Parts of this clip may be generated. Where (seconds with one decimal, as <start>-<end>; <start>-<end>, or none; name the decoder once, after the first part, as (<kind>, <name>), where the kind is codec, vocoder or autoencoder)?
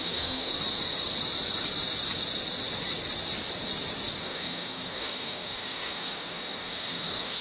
0.0-0.5 (codec, DAC); 4.2-7.4